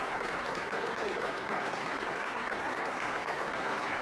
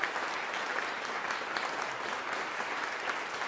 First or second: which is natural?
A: second